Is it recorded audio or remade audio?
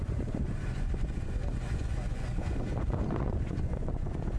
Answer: remade